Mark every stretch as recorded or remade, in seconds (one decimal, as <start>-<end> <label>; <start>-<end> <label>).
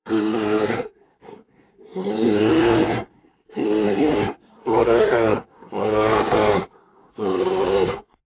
0.0-8.3 remade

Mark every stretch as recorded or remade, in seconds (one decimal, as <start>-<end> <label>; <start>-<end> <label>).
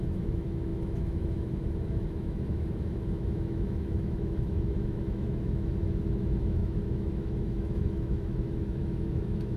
0.0-9.6 remade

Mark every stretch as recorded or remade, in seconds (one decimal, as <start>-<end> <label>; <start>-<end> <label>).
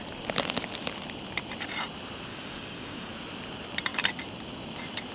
0.0-2.3 recorded; 2.3-3.1 remade; 3.1-5.1 recorded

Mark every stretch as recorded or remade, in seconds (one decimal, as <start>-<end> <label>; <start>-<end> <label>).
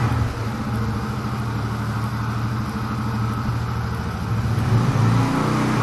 0.0-5.8 recorded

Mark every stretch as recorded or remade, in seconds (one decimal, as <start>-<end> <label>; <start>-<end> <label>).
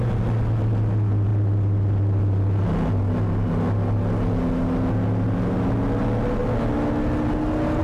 0.0-7.8 recorded